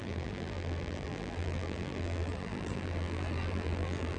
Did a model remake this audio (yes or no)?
yes